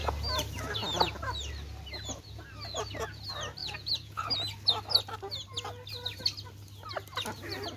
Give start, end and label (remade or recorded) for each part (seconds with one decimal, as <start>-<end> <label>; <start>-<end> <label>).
0.0-3.6 recorded; 3.6-4.3 remade; 4.3-7.8 recorded